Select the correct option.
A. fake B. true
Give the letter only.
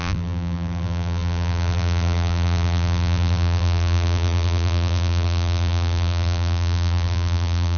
A